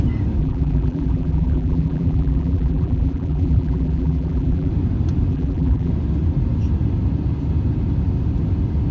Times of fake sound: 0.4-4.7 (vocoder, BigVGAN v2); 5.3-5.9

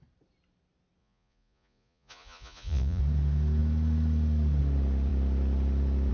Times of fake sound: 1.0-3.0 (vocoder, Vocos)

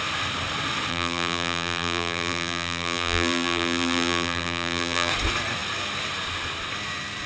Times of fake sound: 0.9-5.1 (vocoder, BigVGAN v2)

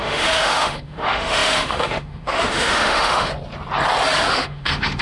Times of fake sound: 0.0-3.3 (autoencoder, DAC-VAE); 4.3-5.0